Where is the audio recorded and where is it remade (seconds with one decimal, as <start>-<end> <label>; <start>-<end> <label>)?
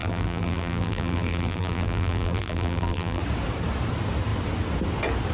0.0-3.2 remade; 3.2-5.3 recorded